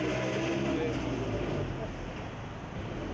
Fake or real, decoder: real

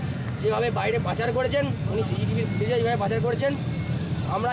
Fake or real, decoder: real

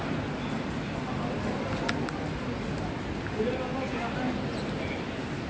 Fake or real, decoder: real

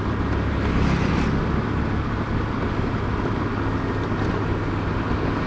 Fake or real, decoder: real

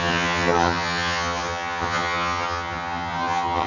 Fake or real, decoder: fake, vocoder, HiFi-GAN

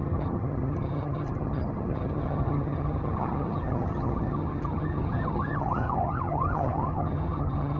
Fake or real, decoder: fake, vocoder, HiFi-GAN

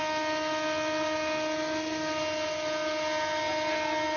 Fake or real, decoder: real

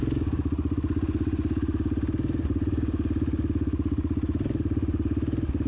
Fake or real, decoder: real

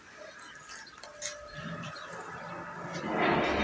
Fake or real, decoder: real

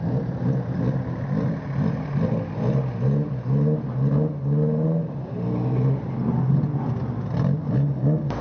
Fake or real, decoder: real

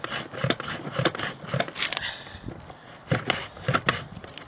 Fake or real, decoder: real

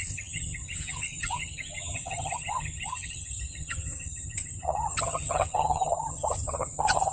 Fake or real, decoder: fake, vocoder, HiFi-GAN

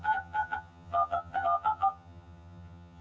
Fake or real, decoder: fake, vocoder, HiFi-GAN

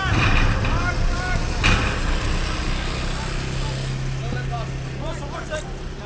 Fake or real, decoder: real